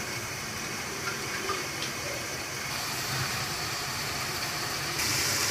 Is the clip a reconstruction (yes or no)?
yes